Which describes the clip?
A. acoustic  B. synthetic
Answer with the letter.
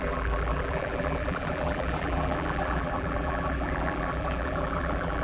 B